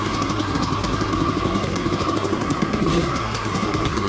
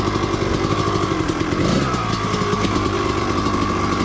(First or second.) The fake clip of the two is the first